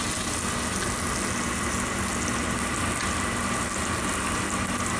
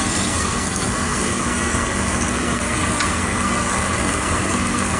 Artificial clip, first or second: second